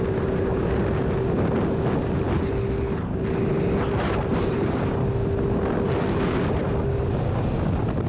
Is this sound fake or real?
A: real